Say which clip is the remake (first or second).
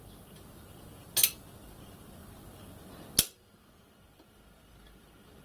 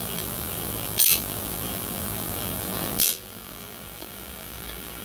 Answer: second